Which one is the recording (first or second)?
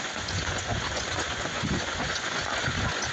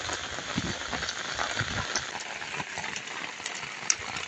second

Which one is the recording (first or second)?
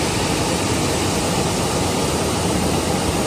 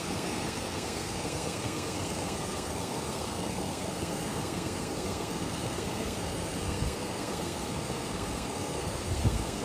first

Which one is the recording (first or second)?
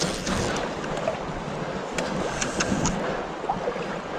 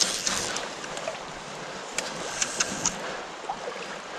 first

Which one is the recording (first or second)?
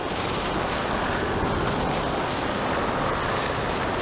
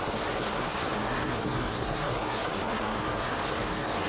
first